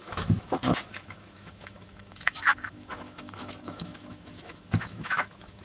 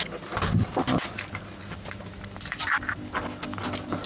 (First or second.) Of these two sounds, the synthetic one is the first